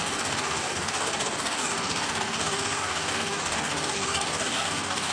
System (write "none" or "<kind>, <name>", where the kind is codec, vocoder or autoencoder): codec, DAC